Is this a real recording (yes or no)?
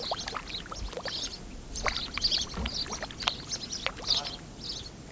yes